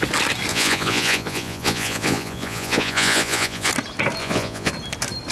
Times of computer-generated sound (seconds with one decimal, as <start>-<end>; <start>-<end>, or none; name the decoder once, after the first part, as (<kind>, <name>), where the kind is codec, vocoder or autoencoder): 0.5-3.7 (vocoder, Vocos); 4.2-4.7